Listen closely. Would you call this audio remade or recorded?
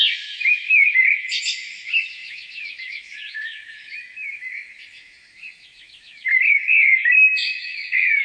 remade